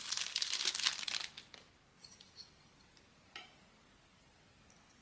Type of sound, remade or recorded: recorded